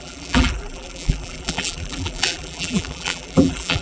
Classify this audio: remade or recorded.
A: remade